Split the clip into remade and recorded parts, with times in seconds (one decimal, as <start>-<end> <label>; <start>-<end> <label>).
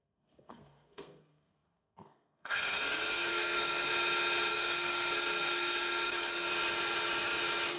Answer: 0.0-3.9 remade; 3.9-4.5 recorded; 4.5-6.5 remade; 6.5-7.8 recorded